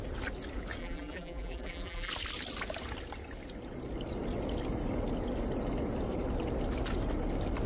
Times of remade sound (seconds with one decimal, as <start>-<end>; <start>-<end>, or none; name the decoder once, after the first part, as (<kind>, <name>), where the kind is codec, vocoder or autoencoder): 0.8-2.1 (vocoder, BigVGAN v2)